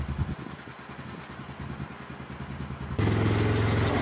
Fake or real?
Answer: real